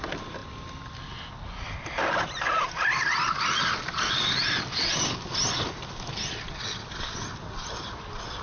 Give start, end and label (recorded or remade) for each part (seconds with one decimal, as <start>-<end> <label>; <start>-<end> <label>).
0.0-8.4 recorded